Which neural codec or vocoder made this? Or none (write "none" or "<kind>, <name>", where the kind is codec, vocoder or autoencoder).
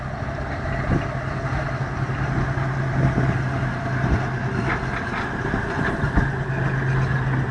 none